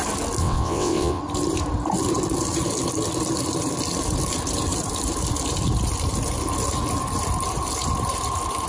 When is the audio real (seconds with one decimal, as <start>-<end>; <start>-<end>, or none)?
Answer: 0.0-0.4; 1.2-8.7